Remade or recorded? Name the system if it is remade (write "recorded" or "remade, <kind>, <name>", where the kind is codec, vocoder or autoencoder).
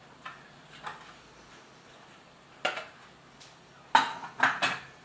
recorded